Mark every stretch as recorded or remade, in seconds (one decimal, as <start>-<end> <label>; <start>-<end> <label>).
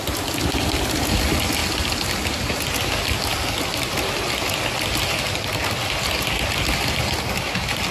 0.0-7.9 recorded